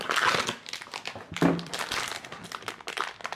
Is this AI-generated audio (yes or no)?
no